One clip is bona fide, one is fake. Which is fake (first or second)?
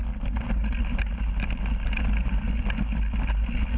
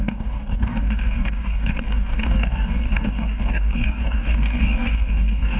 second